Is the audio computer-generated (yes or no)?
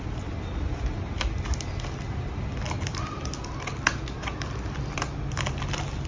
no